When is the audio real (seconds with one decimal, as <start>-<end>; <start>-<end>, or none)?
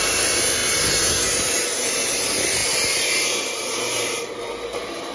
0.0-0.6; 2.1-2.6; 4.4-5.1